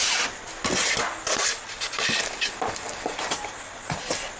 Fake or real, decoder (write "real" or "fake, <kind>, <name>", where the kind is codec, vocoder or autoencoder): real